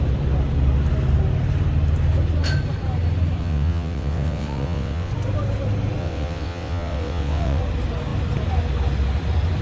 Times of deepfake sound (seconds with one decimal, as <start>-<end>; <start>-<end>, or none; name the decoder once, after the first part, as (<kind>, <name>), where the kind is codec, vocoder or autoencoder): 3.4-5.1 (vocoder, WaveNeXt); 6.0-7.6